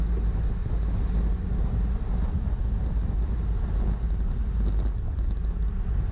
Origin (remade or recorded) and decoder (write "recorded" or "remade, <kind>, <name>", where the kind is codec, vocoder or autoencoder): recorded